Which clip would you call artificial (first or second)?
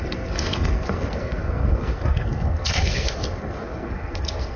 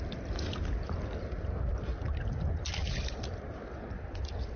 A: first